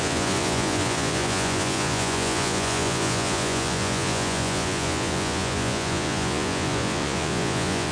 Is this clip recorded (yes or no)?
no